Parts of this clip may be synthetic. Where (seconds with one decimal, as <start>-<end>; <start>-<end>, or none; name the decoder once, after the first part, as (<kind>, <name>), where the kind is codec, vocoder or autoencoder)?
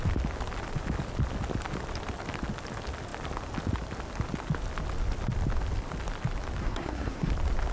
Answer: 6.6-7.3 (codec, SNAC)